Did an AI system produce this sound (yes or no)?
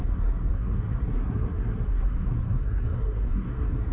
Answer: yes